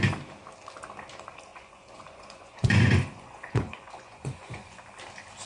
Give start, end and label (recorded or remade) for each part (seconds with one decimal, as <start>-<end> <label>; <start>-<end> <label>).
0.0-1.5 recorded; 1.5-4.8 remade; 4.8-5.5 recorded